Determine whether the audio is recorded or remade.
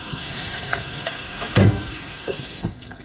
remade